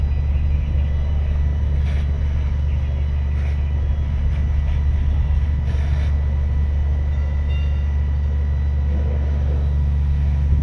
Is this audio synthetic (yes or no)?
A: no